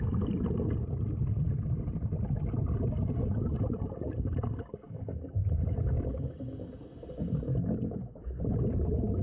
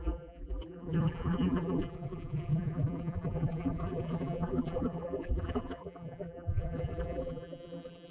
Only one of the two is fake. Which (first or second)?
second